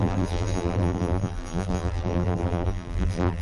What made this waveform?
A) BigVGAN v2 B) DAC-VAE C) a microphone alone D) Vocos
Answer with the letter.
A